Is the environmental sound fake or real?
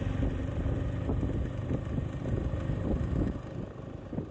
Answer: real